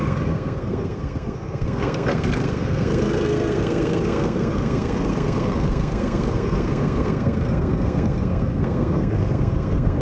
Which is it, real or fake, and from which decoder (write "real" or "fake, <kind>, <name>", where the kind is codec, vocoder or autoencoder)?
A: fake, codec, SNAC